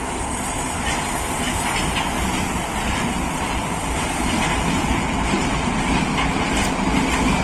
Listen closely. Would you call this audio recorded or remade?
recorded